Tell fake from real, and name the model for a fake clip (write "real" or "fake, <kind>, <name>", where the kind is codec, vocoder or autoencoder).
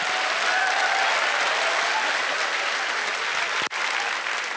real